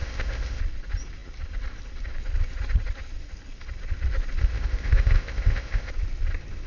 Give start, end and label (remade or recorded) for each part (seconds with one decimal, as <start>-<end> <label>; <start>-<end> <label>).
0.0-0.6 remade; 0.6-4.4 recorded; 4.4-5.9 remade; 5.9-6.7 recorded